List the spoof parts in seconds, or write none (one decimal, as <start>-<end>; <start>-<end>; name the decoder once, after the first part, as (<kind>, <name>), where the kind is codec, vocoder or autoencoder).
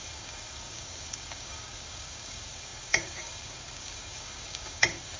0.0-5.2 (codec, DAC)